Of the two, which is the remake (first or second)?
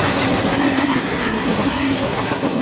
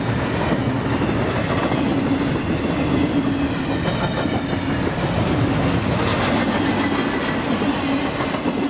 first